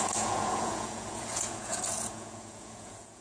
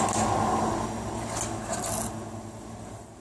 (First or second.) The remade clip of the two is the first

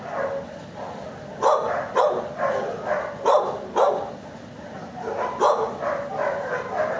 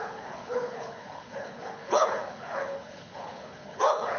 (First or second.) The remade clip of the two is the second